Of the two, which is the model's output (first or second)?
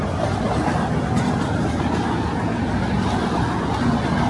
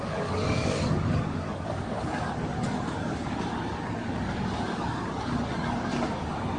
second